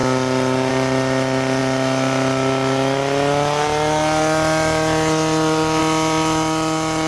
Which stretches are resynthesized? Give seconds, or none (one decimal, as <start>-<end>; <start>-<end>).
none